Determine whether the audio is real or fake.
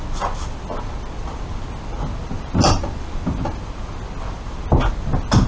real